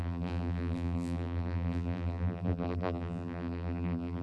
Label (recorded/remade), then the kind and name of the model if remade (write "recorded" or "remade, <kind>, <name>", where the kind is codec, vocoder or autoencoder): remade, vocoder, BigVGAN v2